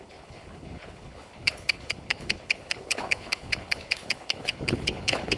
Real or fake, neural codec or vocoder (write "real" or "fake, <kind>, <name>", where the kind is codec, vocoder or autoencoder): fake, codec, HILCodec